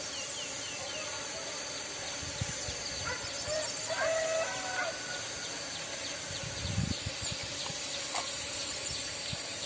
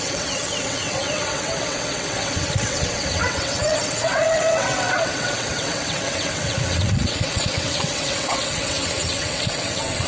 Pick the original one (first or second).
first